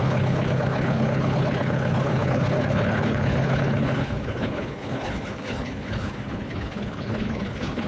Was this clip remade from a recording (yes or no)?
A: yes